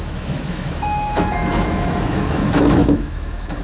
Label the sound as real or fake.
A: fake